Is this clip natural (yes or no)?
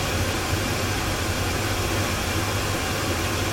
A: yes